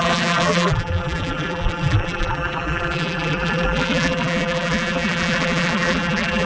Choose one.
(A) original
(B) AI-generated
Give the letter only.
B